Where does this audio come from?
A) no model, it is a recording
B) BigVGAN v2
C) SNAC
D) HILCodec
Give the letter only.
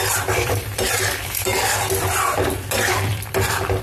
B